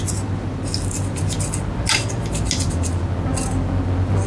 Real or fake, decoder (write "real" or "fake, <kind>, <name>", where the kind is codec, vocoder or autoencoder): real